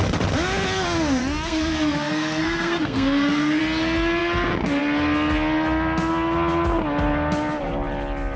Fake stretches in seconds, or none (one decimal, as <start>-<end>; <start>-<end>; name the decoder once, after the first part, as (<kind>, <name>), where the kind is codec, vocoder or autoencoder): 1.2-3.6 (codec, SNAC)